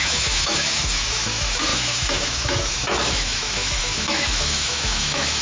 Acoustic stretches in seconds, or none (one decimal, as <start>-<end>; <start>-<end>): none